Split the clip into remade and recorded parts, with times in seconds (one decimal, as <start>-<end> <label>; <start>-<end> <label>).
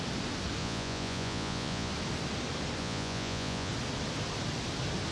0.0-0.6 recorded; 0.6-1.9 remade; 1.9-2.8 recorded; 2.8-3.7 remade; 3.7-5.1 recorded